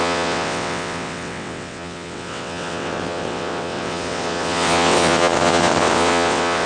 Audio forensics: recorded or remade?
remade